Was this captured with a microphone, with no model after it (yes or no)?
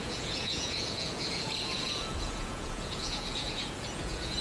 no